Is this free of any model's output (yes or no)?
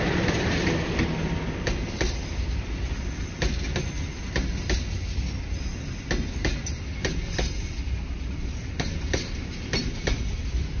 yes